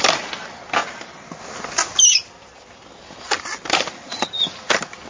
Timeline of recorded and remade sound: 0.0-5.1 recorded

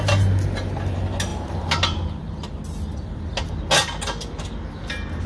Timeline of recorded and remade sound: 0.0-5.3 recorded

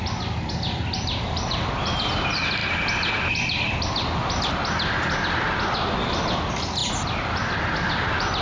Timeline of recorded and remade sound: 0.0-8.4 recorded

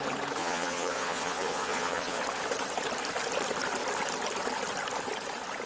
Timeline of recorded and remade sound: 0.0-0.4 recorded; 0.4-2.2 remade; 2.2-5.7 recorded